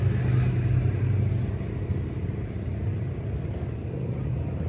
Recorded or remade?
recorded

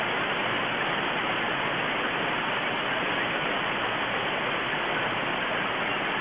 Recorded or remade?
recorded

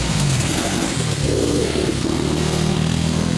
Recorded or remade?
remade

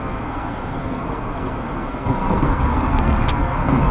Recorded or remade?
remade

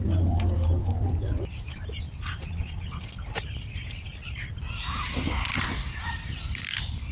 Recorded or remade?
recorded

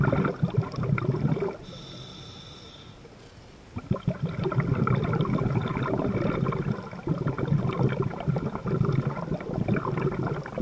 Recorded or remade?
recorded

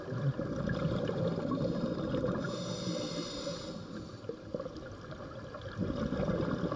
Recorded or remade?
recorded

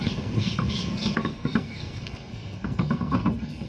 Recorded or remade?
remade